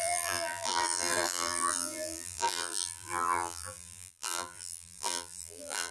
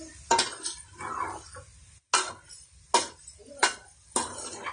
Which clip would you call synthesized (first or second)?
first